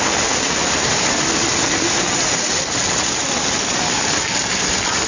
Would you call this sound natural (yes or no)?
yes